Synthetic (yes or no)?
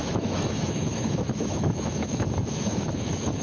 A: yes